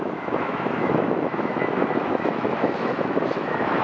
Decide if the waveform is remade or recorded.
remade